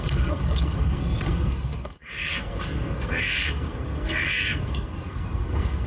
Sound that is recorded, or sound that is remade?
remade